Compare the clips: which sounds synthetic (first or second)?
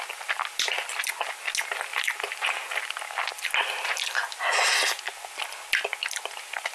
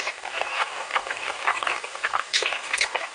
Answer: second